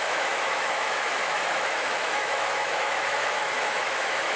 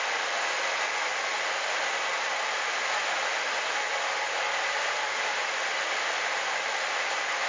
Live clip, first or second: second